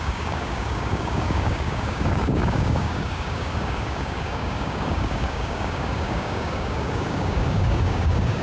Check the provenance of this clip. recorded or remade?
remade